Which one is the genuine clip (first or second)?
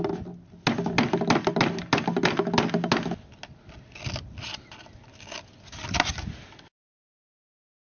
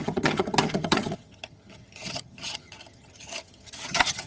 first